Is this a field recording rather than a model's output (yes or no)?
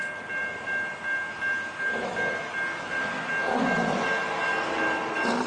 yes